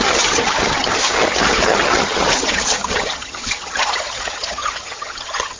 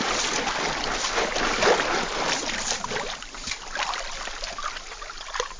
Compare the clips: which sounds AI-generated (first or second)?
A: first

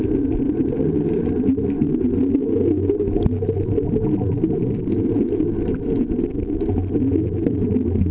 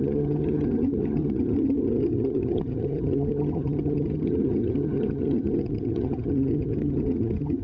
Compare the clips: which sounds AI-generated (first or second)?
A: second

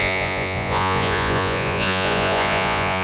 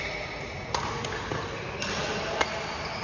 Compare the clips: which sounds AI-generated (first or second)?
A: first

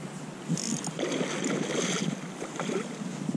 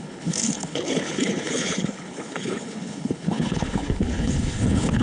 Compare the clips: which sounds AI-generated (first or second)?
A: second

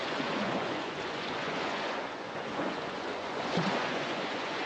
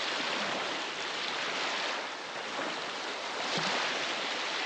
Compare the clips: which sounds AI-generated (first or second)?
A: first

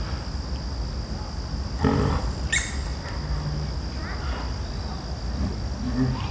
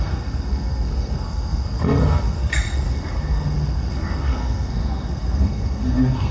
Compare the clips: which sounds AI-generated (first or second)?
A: second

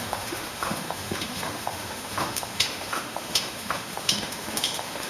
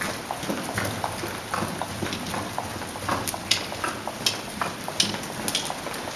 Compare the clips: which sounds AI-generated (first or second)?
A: first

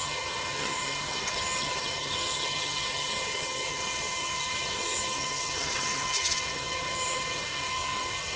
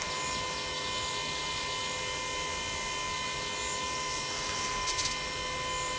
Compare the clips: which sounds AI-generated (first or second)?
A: first